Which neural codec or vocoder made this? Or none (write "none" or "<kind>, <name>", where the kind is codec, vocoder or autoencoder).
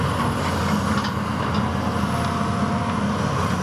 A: none